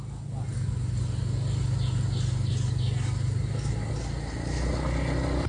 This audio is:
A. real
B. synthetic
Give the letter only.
A